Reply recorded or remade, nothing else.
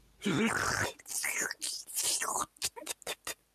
recorded